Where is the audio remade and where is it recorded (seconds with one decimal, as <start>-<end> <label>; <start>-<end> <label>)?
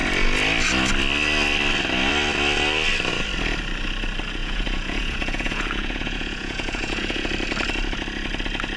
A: 0.0-4.4 recorded; 4.4-7.3 remade; 7.3-8.8 recorded